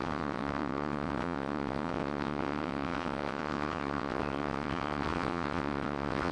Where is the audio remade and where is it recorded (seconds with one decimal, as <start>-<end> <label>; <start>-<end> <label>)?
0.0-6.3 remade